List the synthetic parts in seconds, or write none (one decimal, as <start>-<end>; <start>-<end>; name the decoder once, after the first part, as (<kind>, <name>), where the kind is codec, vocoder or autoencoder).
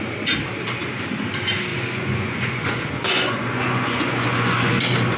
1.7-4.8 (vocoder, Vocos)